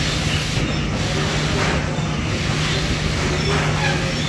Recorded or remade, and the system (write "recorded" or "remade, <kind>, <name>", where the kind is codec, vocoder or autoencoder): recorded